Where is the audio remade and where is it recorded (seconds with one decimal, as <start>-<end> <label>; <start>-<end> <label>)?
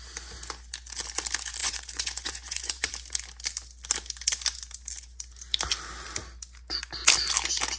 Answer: 0.0-1.6 recorded; 1.6-2.9 remade; 2.9-7.8 recorded